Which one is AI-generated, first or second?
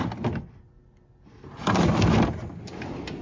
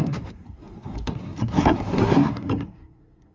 second